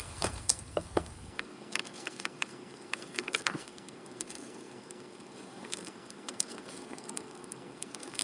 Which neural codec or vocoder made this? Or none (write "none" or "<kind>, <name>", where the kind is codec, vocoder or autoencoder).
codec, SNAC